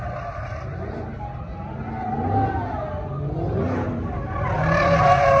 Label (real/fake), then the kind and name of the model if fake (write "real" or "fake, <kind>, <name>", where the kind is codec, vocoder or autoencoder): real